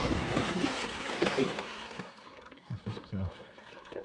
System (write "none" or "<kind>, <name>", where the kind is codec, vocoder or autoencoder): codec, SNAC